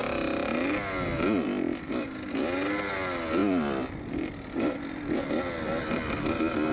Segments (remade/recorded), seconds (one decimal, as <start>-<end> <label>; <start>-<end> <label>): 0.0-6.7 recorded